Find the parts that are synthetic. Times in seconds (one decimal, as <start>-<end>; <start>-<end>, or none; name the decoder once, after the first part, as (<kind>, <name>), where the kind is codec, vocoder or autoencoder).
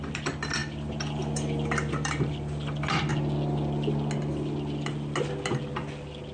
0.6-3.1 (vocoder, BigVGAN v2)